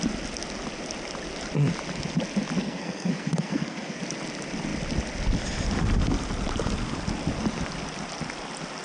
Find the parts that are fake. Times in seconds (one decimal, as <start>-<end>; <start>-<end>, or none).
2.6-4.0